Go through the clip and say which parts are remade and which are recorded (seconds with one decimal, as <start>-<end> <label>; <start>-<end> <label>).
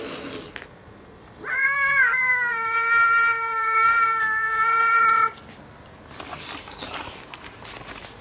0.0-1.5 recorded; 1.5-5.0 remade; 5.0-8.2 recorded